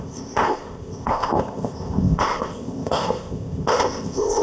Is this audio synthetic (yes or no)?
yes